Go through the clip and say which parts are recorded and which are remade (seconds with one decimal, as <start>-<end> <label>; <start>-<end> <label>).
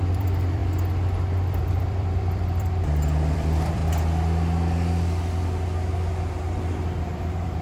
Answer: 0.0-0.6 remade; 0.6-1.6 recorded; 1.6-3.8 remade; 3.8-6.6 recorded; 6.6-7.6 remade